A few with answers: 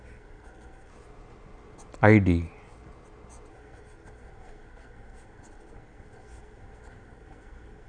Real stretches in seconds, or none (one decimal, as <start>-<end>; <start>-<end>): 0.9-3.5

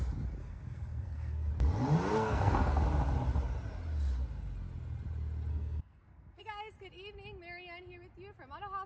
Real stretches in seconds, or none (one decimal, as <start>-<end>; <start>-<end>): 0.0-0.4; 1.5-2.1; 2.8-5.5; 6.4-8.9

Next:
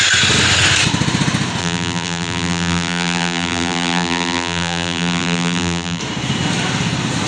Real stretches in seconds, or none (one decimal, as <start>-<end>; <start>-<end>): 0.0-1.6; 6.0-7.3